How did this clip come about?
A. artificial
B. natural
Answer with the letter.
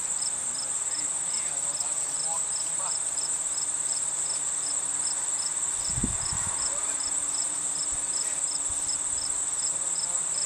B